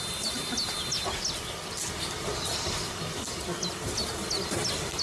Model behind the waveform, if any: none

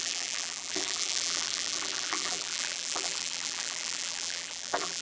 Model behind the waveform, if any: vocoder, BigVGAN v2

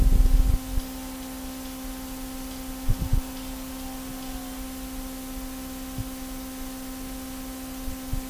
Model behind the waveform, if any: none